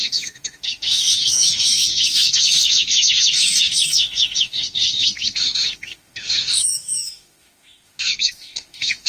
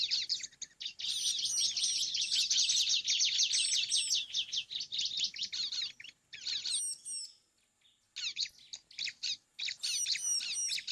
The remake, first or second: first